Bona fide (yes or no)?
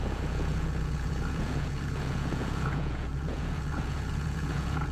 no